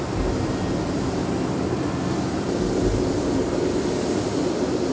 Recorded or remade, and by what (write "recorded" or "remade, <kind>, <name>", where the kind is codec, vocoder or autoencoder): recorded